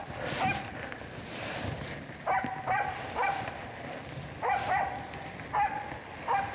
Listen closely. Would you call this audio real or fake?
real